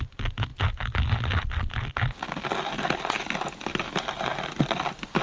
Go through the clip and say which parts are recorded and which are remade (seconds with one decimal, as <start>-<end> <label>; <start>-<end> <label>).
0.0-5.2 recorded